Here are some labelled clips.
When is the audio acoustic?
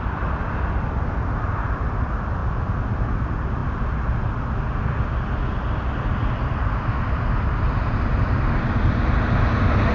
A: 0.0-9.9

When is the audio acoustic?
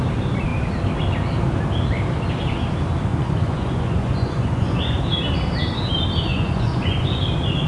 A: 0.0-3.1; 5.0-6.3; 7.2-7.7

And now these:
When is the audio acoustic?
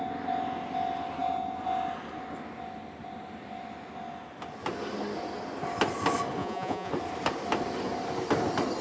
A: 0.0-6.4; 6.9-8.8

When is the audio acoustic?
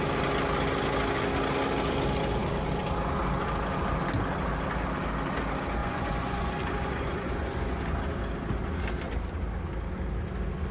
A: 0.0-5.8; 7.8-10.7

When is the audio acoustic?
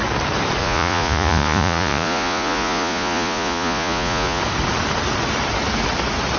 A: 0.0-0.6; 4.4-6.4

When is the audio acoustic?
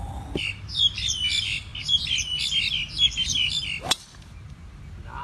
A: 0.0-5.2